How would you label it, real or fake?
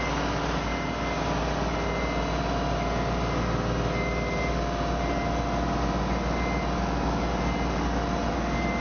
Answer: real